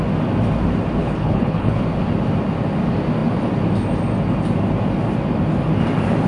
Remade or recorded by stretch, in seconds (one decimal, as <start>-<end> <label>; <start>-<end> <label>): 0.0-1.0 recorded; 1.0-1.8 remade; 1.8-6.3 recorded